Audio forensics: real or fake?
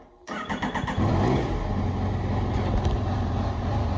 real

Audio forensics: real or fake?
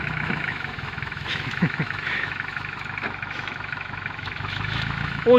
fake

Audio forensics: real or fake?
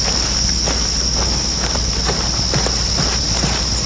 real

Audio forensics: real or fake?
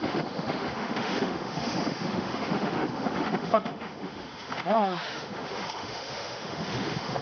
fake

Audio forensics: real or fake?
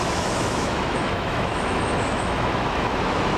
fake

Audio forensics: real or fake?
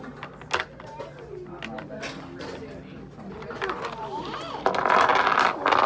real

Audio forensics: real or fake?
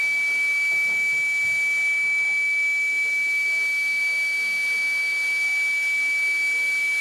real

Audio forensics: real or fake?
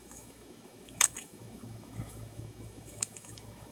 fake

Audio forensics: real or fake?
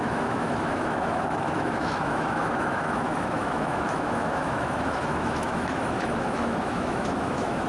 fake